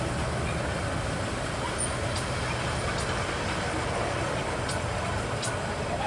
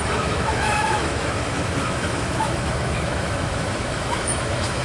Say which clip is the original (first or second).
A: first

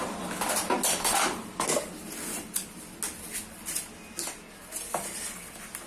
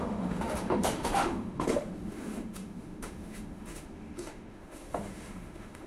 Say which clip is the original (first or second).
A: first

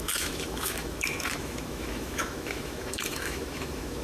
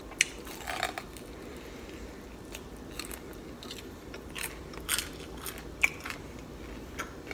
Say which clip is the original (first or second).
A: second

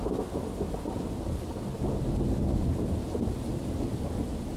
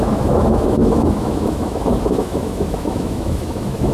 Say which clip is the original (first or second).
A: first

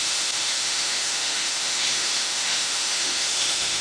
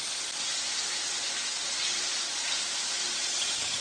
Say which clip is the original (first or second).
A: second